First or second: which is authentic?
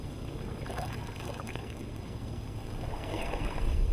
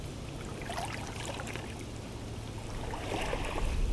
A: second